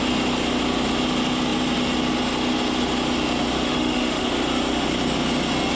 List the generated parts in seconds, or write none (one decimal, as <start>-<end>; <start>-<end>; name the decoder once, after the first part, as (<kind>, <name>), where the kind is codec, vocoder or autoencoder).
3.6-4.3 (autoencoder, DAC-VAE)